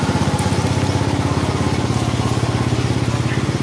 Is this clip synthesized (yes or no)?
no